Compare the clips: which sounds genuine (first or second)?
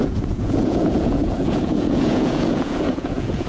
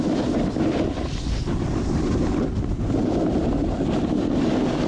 second